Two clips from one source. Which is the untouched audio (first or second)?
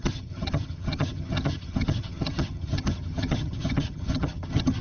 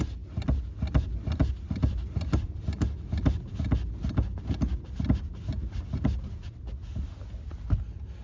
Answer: second